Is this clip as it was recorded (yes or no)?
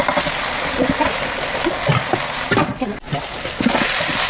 yes